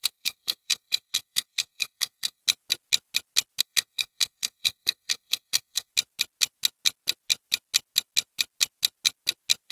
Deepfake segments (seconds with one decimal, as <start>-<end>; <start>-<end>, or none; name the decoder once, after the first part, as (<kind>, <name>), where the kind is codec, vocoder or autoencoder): 0.0-2.4 (codec, SNAC); 3.6-5.9